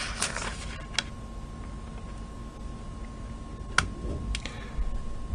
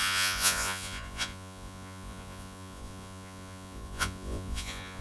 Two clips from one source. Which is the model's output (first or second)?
second